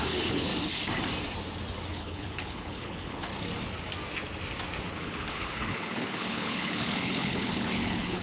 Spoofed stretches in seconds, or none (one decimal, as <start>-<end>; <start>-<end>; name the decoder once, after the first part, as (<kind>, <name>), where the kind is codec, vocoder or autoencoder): 0.0-0.5 (codec, HILCodec); 1.9-3.3; 4.9-8.2